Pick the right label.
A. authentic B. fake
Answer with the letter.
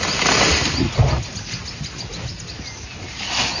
A